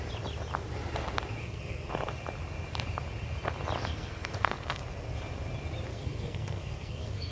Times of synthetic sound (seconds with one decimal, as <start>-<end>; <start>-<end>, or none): 1.4-1.9; 3.8-4.8; 5.9-7.3